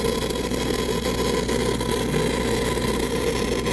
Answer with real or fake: real